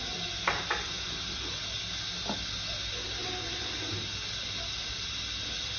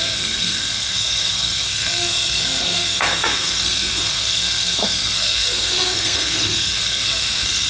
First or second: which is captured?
first